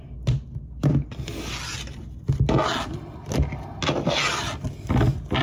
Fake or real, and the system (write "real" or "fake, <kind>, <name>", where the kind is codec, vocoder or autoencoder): real